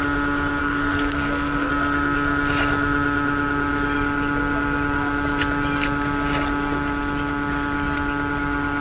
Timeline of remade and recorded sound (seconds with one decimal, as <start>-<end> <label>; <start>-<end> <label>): 0.0-0.6 recorded; 0.6-1.7 remade; 1.7-8.8 recorded